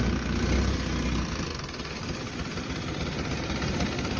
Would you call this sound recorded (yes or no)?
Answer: yes